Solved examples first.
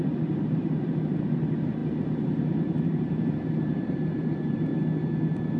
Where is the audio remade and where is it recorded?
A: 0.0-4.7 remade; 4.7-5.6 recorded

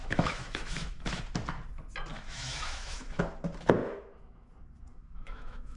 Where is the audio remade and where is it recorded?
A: 0.0-1.2 remade; 1.2-2.1 recorded; 2.1-3.2 remade; 3.2-3.8 recorded; 3.8-4.5 remade; 4.5-4.9 recorded; 4.9-5.8 remade

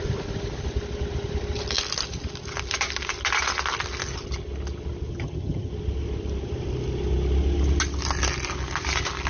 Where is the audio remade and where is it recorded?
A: 0.0-5.1 recorded; 5.1-5.7 remade; 5.7-9.3 recorded